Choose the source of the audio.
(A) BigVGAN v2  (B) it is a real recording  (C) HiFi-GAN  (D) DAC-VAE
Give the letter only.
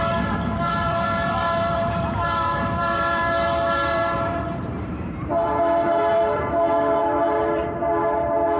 A